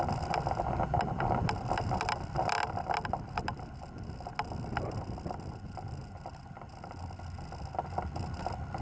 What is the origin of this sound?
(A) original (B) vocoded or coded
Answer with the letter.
A